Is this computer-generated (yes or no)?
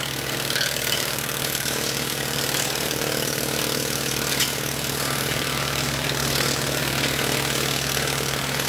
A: yes